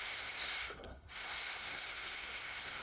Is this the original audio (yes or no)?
no